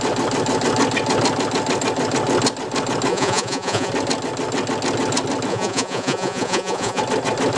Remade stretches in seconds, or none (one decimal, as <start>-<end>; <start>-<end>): 3.1-3.9; 5.5-7.0